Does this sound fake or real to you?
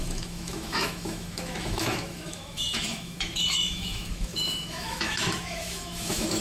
fake